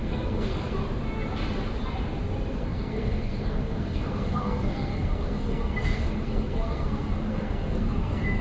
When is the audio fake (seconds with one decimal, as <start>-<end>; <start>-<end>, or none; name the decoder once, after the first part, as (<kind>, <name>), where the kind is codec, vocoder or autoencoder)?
0.0-0.8 (codec, SNAC); 2.5-8.4

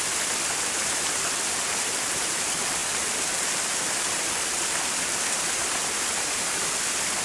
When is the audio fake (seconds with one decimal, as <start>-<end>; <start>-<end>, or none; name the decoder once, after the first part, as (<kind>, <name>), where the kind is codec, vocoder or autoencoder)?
0.0-2.8 (vocoder, BigVGAN v2); 3.4-7.2

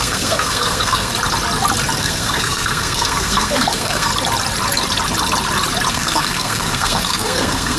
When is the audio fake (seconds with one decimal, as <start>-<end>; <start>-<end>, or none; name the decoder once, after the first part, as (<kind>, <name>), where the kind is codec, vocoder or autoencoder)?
0.0-1.1 (codec, SNAC); 2.0-4.1; 5.9-7.8

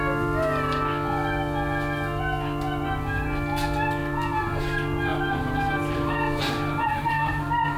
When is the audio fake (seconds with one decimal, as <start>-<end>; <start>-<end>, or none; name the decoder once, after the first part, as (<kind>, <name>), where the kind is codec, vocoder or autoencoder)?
4.0-4.6 (vocoder, BigVGAN v2); 5.1-7.1

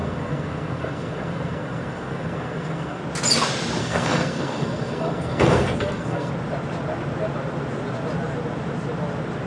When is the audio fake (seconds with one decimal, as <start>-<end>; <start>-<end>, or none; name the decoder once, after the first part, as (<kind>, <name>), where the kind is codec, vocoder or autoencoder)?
0.0-3.0 (codec, SNAC); 3.8-6.3

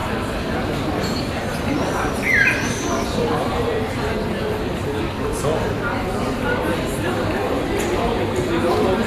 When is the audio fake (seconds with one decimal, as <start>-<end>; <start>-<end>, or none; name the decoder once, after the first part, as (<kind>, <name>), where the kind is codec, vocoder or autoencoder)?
none

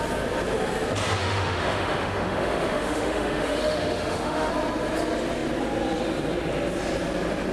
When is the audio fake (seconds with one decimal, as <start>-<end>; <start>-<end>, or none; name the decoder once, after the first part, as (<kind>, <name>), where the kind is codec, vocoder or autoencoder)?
1.2-4.5 (autoencoder, DAC-VAE)